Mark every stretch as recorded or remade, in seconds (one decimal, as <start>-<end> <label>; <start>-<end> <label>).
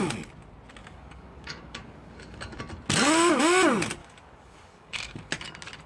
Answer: 0.0-0.8 recorded; 0.8-2.6 remade; 2.6-4.0 recorded; 4.0-5.3 remade; 5.3-5.9 recorded